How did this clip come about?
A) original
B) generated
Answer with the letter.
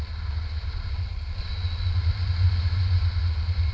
A